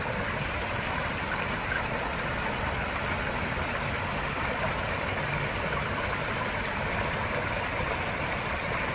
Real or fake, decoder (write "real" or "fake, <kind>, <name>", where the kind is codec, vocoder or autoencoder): real